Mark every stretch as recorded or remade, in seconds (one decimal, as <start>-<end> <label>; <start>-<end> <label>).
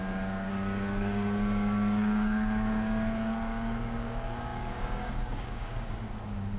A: 0.0-6.6 remade